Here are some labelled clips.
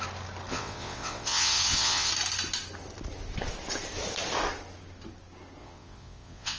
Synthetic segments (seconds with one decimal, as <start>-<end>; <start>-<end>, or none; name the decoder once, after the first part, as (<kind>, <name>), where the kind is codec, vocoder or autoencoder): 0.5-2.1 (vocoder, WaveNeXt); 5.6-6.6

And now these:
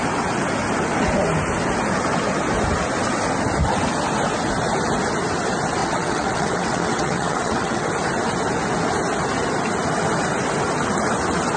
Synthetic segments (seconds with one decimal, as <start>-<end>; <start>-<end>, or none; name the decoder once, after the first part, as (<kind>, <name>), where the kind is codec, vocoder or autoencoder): 5.8-7.9 (vocoder, WaveNeXt)

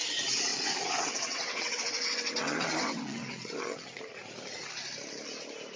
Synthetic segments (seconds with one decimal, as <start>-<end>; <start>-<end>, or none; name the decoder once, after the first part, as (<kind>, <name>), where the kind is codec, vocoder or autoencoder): 0.5-4.0 (vocoder, WaveNeXt)

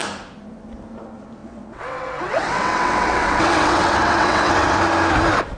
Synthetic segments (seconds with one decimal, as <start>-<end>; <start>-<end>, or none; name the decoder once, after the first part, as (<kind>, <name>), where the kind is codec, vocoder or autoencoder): 1.4-4.8 (vocoder, WaveNeXt)

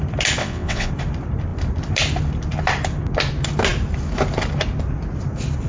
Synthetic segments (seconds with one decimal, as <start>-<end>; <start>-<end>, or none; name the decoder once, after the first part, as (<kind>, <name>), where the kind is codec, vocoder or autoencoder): 0.4-0.9 (vocoder, WaveNeXt)